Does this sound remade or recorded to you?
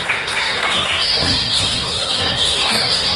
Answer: remade